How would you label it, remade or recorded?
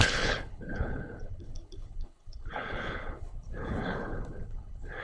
remade